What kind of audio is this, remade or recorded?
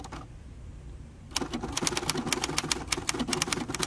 recorded